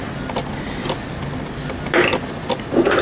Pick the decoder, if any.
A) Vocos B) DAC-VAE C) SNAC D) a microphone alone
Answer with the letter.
D